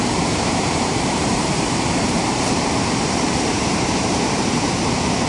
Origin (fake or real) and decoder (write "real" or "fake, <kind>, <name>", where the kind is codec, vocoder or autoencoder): fake, vocoder, BigVGAN v2